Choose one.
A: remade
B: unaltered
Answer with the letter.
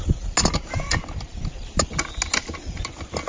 B